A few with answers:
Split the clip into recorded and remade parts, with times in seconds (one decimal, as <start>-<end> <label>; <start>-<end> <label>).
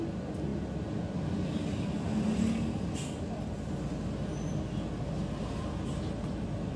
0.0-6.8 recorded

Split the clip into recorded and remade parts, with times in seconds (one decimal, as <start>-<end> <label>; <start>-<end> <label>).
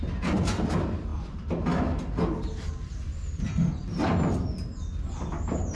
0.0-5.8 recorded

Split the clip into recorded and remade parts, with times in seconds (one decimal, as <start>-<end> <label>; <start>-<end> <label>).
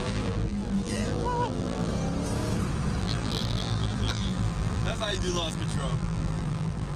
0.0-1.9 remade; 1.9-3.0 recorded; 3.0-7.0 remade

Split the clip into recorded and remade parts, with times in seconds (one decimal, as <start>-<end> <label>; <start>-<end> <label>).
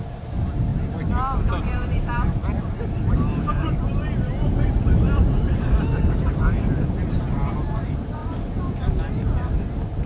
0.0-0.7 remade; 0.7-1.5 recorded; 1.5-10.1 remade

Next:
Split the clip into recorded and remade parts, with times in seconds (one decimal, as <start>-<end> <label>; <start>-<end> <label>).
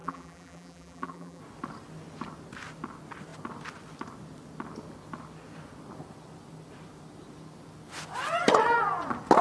0.0-1.4 remade; 1.4-9.4 recorded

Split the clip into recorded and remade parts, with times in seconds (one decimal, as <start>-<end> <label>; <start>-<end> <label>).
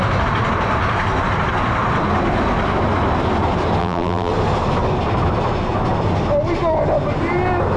0.0-3.8 recorded; 3.8-4.3 remade; 4.3-7.8 recorded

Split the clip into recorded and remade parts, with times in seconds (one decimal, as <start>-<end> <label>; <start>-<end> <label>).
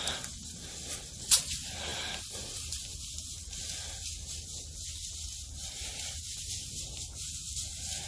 0.0-0.4 recorded; 0.4-1.3 remade; 1.3-1.9 recorded; 1.9-3.5 remade; 3.5-5.6 recorded; 5.6-6.8 remade; 6.8-8.1 recorded